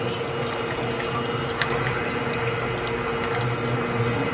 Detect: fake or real real